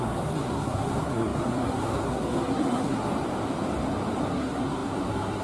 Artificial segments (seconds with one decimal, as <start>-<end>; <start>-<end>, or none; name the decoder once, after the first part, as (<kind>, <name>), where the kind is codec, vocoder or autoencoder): 0.0-3.1 (codec, SNAC); 4.3-5.4